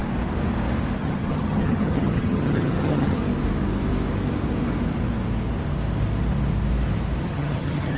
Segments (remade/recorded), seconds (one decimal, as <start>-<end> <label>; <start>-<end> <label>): 0.0-1.0 recorded; 1.0-3.2 remade; 3.2-7.2 recorded; 7.2-8.0 remade